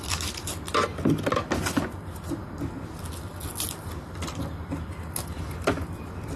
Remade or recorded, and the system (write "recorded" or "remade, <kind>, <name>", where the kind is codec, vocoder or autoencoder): recorded